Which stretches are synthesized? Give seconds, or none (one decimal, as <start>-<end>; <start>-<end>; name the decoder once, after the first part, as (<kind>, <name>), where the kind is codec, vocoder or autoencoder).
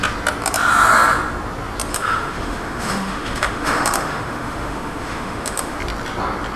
1.9-5.8 (autoencoder, DAC-VAE)